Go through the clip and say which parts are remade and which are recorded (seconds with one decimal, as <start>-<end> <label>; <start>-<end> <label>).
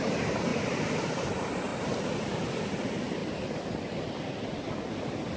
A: 0.0-5.4 recorded